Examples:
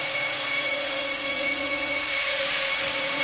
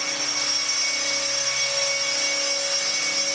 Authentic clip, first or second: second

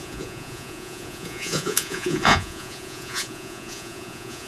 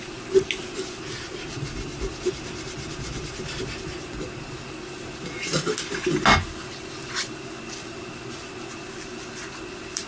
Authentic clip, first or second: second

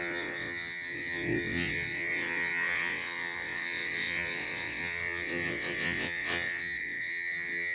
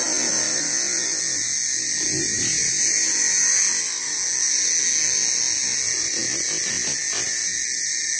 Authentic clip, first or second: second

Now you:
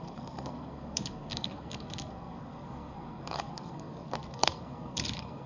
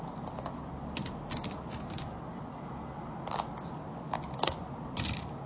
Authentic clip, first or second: second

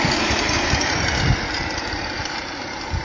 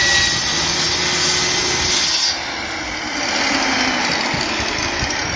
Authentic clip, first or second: second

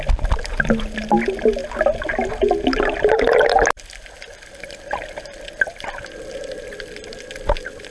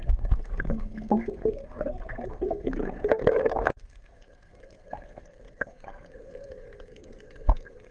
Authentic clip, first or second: first